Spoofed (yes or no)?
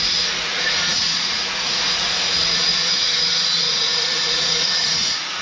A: yes